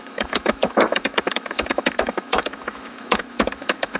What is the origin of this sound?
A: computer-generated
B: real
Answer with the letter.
A